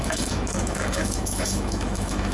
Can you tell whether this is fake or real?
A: fake